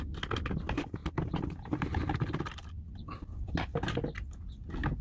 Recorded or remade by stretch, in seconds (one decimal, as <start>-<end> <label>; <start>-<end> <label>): 0.0-5.0 recorded